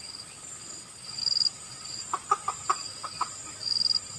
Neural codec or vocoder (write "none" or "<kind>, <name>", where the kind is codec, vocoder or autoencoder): none